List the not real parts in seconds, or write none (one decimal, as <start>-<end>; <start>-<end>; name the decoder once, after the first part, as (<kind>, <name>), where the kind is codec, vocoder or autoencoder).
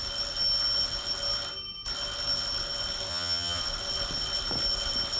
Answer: 3.1-3.6 (vocoder, HiFi-GAN)